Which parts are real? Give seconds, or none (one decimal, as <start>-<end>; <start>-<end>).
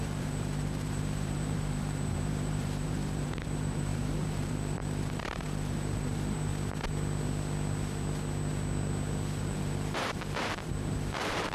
6.5-9.4